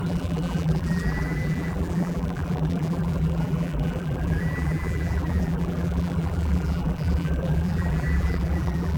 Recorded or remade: remade